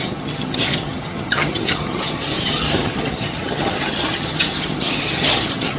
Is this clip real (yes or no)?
no